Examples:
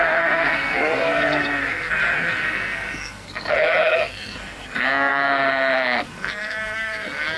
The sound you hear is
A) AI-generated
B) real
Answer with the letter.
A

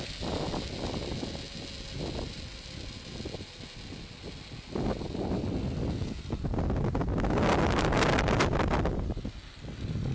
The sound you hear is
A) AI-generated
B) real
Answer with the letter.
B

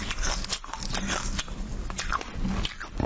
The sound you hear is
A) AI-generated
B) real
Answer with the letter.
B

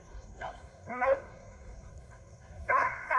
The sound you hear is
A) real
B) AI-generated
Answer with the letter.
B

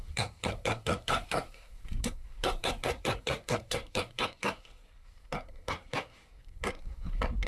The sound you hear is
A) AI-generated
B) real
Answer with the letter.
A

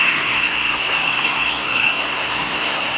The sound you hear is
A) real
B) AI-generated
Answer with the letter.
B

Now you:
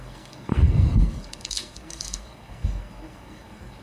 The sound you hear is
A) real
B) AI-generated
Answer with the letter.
B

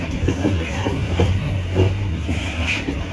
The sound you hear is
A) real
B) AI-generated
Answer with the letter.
B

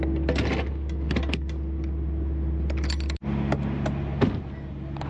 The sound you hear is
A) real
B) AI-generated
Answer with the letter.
A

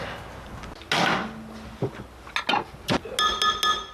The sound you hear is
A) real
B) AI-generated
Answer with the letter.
A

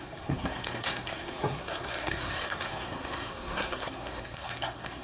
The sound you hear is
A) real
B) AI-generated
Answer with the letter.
B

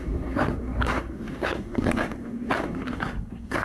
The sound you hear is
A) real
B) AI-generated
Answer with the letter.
B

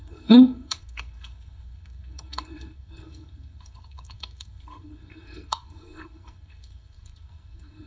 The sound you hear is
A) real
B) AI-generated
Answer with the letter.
B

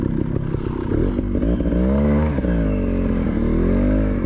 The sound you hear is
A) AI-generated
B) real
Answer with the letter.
B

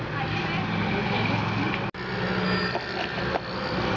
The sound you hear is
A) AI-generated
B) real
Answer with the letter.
B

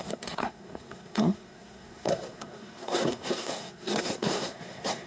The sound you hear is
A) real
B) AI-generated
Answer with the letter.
B